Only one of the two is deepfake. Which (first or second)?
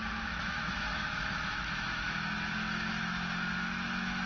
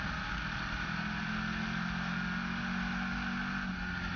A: first